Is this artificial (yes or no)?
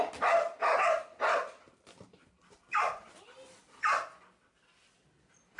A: yes